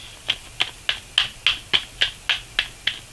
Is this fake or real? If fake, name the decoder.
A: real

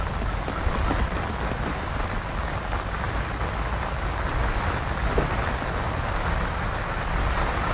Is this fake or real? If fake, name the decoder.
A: real